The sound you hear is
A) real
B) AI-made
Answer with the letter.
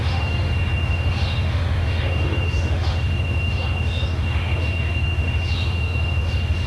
B